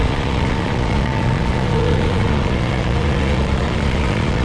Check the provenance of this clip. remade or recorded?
remade